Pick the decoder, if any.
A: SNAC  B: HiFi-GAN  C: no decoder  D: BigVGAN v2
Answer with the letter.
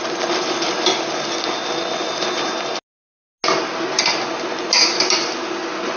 C